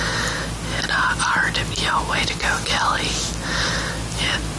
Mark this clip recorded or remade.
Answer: recorded